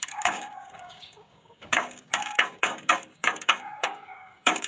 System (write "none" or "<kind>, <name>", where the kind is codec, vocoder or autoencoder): codec, DAC